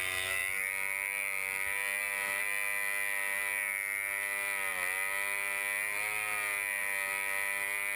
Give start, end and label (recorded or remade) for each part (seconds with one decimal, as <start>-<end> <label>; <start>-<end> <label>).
0.0-8.0 recorded